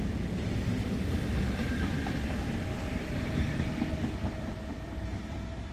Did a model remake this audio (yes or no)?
no